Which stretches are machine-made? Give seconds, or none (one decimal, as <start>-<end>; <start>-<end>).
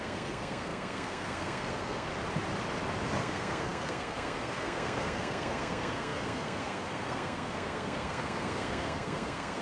0.0-2.1; 3.2-9.6